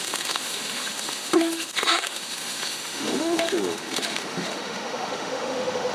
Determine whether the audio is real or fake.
fake